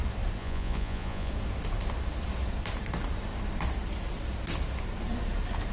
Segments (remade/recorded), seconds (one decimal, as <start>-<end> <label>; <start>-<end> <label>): 0.0-0.4 recorded; 0.4-1.3 remade; 1.3-5.7 recorded